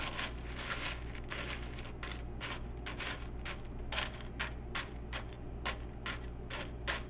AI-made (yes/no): no